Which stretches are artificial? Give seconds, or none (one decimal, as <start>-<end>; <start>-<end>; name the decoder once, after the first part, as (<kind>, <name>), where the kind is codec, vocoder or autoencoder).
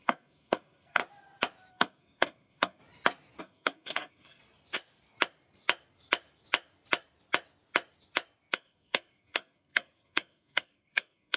0.0-1.0 (codec, SNAC); 1.7-2.8; 3.4-4.4; 8.5-11.4